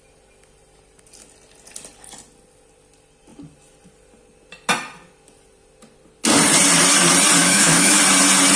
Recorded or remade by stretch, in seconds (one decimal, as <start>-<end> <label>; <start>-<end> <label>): 0.0-7.4 recorded; 7.4-8.0 remade; 8.0-8.6 recorded